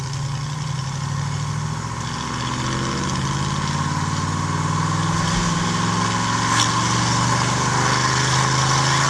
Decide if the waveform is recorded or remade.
recorded